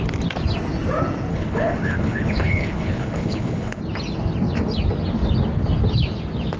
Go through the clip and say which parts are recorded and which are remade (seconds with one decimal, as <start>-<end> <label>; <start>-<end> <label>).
0.0-1.3 recorded; 1.3-3.8 remade; 3.8-6.6 recorded